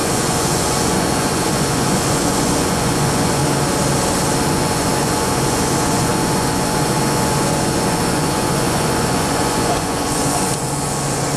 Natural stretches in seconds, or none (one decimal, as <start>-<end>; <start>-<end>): 3.4-4.5